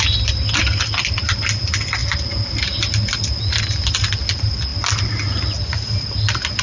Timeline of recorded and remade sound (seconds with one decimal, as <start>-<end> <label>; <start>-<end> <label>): 0.0-6.6 recorded